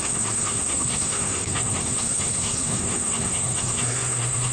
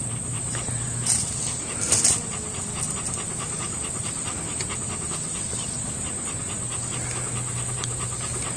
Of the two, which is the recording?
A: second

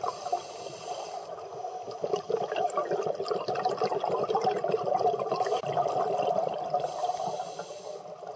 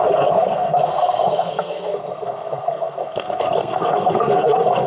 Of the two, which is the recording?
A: first